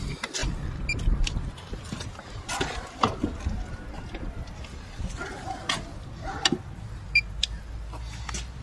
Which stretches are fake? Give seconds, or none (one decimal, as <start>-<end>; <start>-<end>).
none